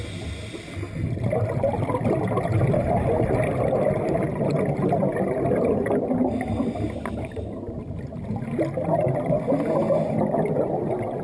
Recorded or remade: recorded